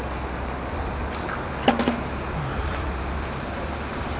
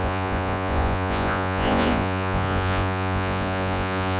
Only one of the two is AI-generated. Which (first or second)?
second